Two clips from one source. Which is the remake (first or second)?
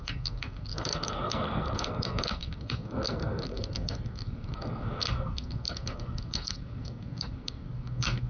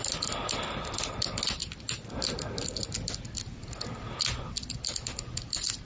first